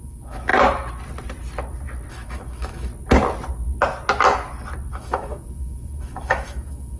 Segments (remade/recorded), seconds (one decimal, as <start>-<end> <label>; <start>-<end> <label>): 0.0-0.5 remade; 0.5-2.1 recorded; 2.1-2.9 remade; 2.9-4.9 recorded; 4.9-7.0 remade